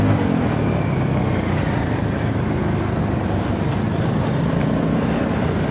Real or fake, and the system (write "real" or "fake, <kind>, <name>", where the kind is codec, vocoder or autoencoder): real